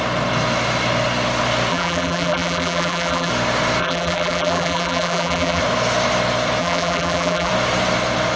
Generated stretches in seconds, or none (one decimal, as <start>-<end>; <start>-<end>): 1.7-3.3; 3.8-5.6; 6.6-7.5

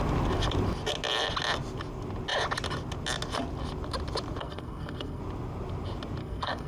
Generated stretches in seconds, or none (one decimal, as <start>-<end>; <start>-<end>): 4.4-5.2; 6.2-6.7

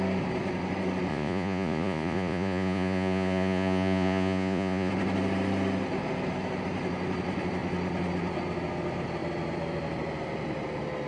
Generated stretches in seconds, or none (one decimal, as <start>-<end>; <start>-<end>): 1.1-4.9